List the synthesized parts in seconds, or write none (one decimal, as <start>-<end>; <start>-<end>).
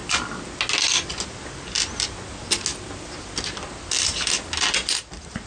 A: none